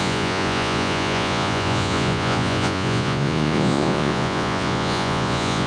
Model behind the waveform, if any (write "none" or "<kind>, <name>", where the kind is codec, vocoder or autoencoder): vocoder, Vocos